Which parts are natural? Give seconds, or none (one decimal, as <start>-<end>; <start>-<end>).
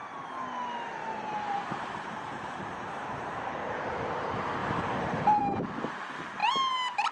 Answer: 0.0-1.0; 3.5-4.6; 5.4-7.1